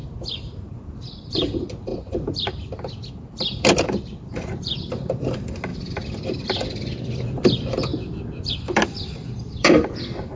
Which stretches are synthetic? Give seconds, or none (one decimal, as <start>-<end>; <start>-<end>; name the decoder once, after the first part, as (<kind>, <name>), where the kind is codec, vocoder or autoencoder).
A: 1.3-1.9 (vocoder, BigVGAN v2); 3.1-7.9; 8.5-10.4